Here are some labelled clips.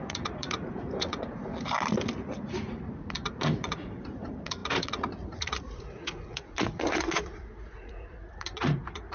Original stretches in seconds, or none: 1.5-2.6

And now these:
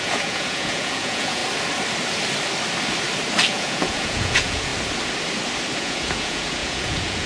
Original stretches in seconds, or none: 1.4-3.5; 4.7-5.8

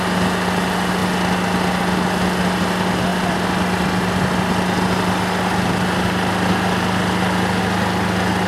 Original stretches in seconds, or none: 0.0-8.5

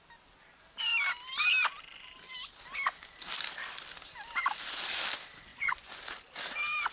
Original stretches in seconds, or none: 0.0-5.5; 6.0-6.9

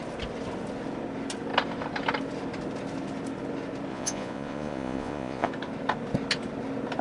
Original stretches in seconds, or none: 0.0-3.9; 5.5-7.0